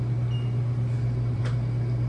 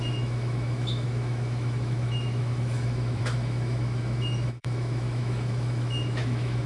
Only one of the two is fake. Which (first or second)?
second